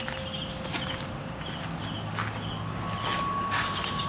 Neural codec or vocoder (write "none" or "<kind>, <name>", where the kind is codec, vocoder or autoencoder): none